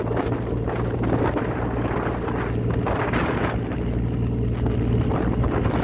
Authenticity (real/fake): real